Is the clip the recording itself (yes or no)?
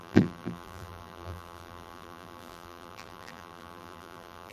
no